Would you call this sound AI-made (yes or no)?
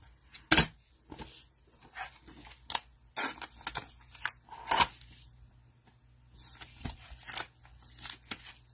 no